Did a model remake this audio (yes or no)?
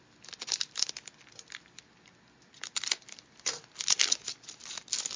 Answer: no